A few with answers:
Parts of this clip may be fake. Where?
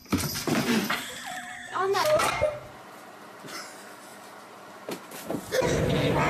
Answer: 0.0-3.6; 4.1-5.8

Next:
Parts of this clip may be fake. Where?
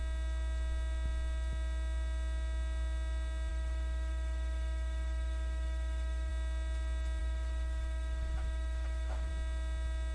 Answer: 3.5-6.3; 7.2-9.3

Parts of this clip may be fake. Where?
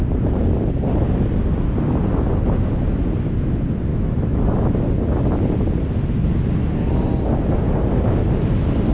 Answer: 3.9-4.7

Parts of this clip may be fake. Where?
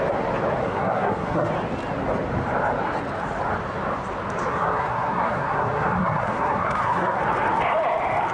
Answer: 0.6-1.5; 4.5-7.2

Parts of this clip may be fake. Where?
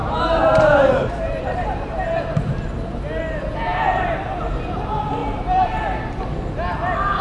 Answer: 0.0-2.6; 3.7-4.3; 5.2-6.1